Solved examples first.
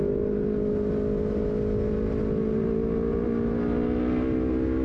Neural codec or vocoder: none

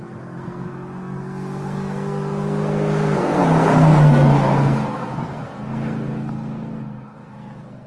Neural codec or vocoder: codec, SNAC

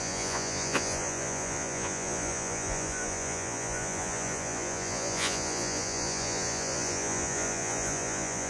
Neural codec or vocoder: vocoder, Vocos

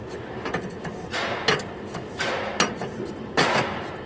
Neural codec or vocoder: none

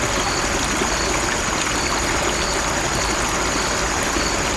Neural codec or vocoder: none